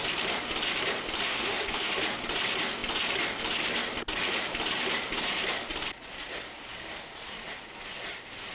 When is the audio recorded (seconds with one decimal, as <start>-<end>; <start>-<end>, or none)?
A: 0.0-1.3; 1.9-8.5